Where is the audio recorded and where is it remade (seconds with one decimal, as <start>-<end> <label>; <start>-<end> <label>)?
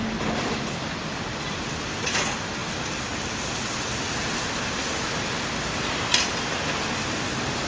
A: 0.0-7.7 recorded